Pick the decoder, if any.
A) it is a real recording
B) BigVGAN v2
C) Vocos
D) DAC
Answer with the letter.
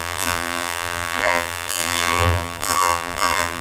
B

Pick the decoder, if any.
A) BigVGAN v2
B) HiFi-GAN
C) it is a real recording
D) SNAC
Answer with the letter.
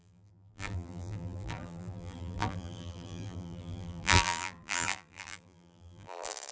A